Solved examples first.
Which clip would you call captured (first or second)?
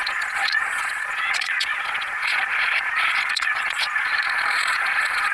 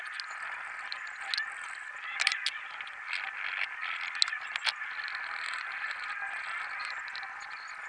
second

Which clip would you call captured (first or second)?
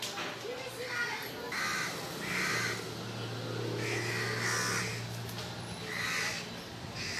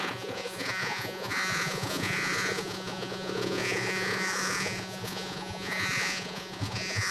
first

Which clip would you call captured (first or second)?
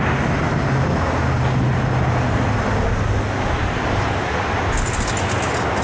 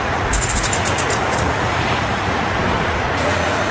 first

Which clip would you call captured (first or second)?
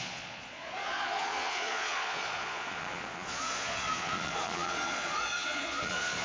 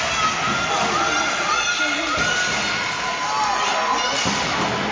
second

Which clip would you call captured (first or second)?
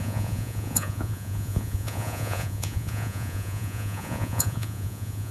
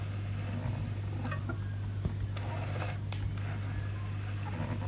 second